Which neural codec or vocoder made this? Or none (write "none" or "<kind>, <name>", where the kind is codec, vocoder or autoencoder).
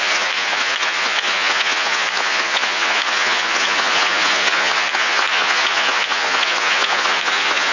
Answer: vocoder, Vocos